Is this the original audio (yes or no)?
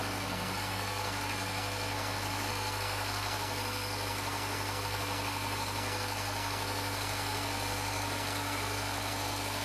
no